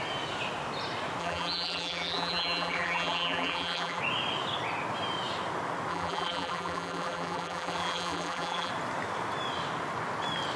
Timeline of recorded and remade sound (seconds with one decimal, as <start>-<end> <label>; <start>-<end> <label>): 0.0-1.2 recorded; 1.2-4.0 remade; 4.0-5.9 recorded; 5.9-8.7 remade; 8.7-10.6 recorded